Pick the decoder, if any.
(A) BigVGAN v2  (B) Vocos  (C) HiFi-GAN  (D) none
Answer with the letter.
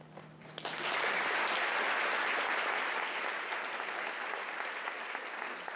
D